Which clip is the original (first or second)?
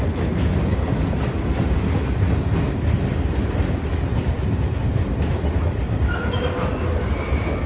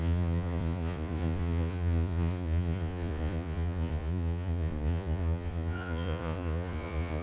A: first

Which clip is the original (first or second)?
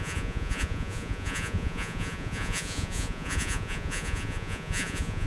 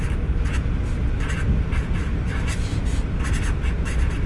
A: second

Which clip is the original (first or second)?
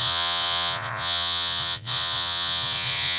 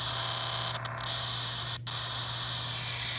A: second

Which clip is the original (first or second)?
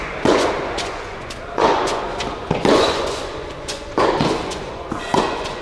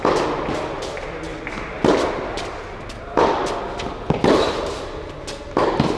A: second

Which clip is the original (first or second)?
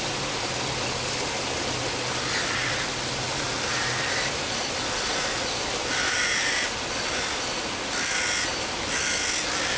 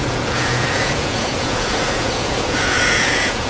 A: first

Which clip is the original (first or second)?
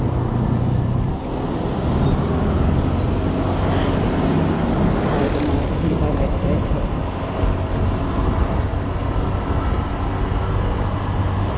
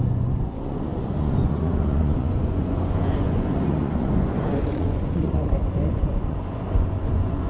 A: first